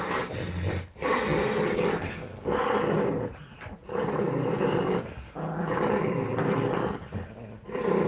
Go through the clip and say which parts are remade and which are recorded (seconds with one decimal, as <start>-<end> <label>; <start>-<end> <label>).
0.0-8.1 recorded